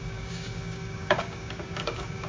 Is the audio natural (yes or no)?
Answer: no